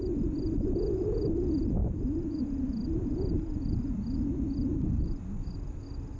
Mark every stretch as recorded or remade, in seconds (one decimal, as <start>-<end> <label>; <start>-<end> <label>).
0.0-1.8 recorded; 1.8-2.4 remade; 2.4-6.2 recorded